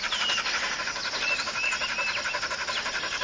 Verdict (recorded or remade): recorded